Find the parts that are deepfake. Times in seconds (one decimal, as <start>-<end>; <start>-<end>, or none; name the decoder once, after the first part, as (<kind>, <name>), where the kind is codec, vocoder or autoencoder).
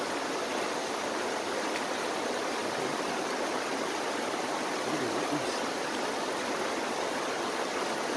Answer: none